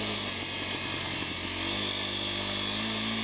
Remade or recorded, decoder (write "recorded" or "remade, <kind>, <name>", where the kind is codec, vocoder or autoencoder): recorded